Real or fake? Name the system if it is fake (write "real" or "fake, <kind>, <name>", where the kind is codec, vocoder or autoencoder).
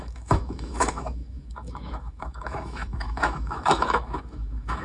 fake, autoencoder, DAC-VAE